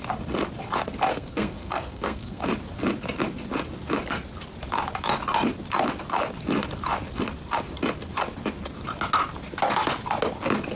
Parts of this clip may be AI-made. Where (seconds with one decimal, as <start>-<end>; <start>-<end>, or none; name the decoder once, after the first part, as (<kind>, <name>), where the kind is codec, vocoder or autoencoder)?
1.1-2.4 (codec, SNAC)